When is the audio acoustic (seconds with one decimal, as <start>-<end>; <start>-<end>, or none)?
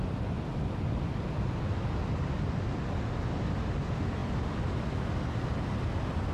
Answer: 0.0-6.3